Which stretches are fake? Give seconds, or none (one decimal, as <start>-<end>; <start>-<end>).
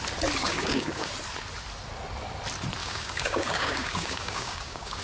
0.4-1.1; 2.8-5.0